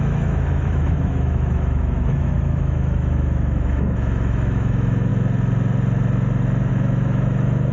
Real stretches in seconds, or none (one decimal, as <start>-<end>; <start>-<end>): 5.1-6.7